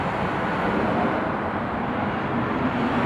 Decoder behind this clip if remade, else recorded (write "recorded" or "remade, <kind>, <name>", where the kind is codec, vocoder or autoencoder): recorded